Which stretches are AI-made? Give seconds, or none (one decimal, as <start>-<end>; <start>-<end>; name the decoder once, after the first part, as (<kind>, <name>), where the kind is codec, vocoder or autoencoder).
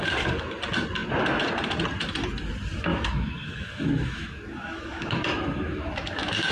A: 2.9-6.5 (autoencoder, DAC-VAE)